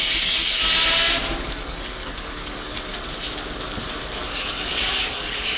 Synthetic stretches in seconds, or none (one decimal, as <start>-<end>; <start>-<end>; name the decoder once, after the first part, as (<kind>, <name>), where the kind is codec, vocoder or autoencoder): 0.0-0.6 (codec, DAC); 1.4-2.9; 4.1-5.6